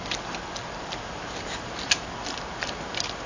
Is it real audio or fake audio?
real